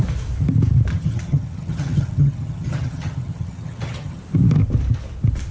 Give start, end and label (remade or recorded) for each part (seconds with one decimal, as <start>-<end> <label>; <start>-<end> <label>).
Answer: 0.0-0.9 recorded; 0.9-4.2 remade; 4.2-5.5 recorded